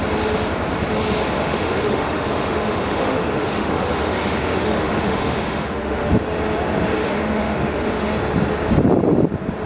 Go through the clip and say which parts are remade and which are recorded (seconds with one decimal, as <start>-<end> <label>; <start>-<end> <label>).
0.0-1.4 recorded; 1.4-6.1 remade; 6.1-7.0 recorded; 7.0-8.1 remade; 8.1-9.7 recorded